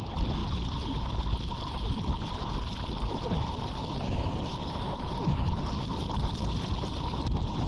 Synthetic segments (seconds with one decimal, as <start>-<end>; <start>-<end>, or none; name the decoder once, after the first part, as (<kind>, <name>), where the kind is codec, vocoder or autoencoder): none